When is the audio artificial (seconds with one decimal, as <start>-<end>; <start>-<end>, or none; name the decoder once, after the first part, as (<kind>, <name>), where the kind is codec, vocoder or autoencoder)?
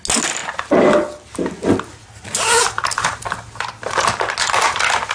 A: none